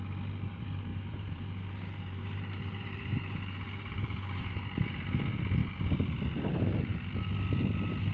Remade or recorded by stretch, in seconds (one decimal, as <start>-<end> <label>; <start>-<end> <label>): 0.0-0.9 recorded; 0.9-4.4 remade; 4.4-8.1 recorded